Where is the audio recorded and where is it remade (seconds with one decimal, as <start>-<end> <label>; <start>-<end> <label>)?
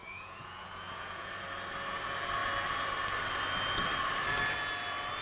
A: 0.0-1.3 remade; 1.3-5.2 recorded